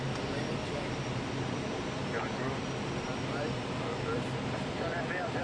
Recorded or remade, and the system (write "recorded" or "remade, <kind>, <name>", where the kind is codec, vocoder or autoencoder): remade, vocoder, BigVGAN v2